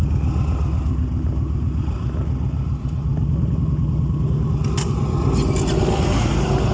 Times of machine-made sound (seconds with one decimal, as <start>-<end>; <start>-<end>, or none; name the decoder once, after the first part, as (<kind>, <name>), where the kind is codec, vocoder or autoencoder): none